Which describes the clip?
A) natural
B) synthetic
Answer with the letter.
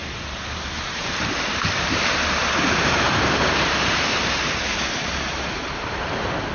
B